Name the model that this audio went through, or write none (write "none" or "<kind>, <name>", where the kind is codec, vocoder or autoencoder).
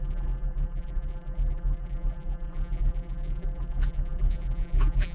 vocoder, BigVGAN v2